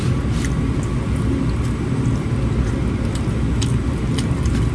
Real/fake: real